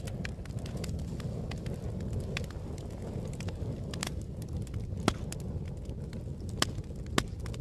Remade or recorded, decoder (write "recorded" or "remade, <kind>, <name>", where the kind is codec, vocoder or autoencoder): recorded